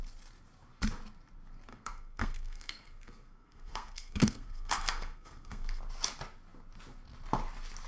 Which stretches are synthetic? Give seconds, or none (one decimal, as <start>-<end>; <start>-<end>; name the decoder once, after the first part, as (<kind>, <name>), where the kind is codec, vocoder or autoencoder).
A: 1.7-5.8 (codec, SNAC)